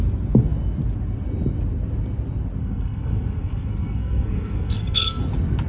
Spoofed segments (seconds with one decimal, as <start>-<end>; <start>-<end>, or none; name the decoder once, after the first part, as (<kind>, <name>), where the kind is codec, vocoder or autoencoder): 2.6-5.2 (codec, SNAC)